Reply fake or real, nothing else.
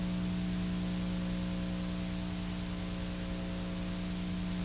real